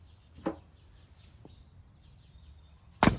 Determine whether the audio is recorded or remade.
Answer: recorded